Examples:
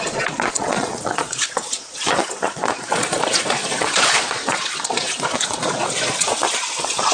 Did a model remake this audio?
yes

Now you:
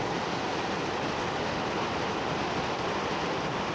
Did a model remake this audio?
no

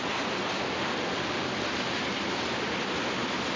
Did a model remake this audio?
no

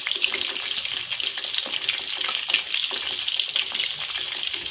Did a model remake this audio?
no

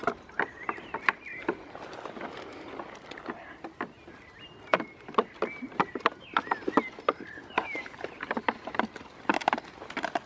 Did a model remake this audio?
no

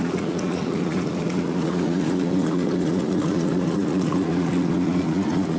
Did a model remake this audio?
yes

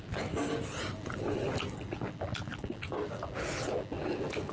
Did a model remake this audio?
no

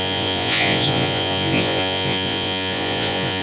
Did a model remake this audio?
yes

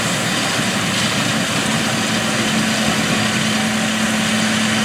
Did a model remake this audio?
no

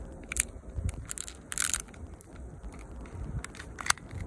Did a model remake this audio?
no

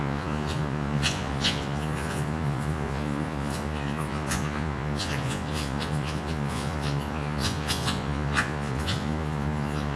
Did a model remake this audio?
yes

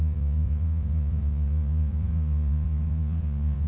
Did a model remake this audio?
yes